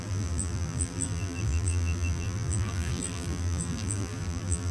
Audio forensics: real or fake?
fake